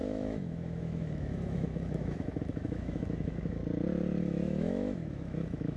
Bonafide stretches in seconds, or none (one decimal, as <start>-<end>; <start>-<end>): 3.6-4.2